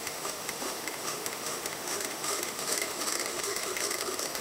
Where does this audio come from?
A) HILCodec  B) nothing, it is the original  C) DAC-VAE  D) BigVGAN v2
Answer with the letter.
C